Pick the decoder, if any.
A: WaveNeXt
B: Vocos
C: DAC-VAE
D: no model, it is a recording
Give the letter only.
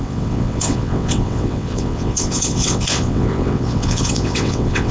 A